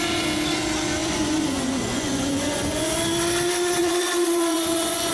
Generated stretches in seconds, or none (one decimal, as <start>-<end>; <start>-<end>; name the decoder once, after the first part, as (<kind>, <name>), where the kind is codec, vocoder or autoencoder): 1.0-3.0 (vocoder, Vocos); 3.8-5.1